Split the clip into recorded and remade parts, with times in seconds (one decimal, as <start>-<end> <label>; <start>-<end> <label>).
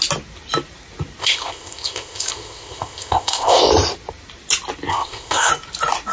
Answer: 0.0-1.2 recorded; 1.2-3.7 remade; 3.7-4.9 recorded; 4.9-5.5 remade; 5.5-6.1 recorded